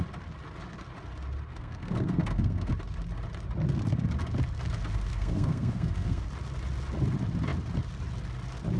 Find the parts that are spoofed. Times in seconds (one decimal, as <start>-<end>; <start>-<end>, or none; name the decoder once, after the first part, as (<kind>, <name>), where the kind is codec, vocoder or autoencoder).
1.5-2.7 (codec, SNAC); 5.1-6.2